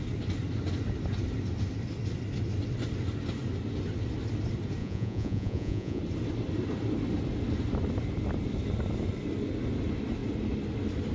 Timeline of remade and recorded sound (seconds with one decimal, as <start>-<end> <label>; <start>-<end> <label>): 0.0-4.8 recorded; 4.8-6.0 remade; 6.0-11.1 recorded